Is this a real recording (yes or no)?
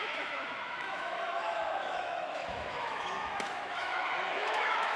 no